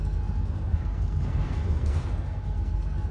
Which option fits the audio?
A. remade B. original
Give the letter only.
A